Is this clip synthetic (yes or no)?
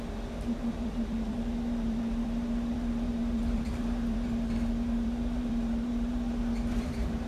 yes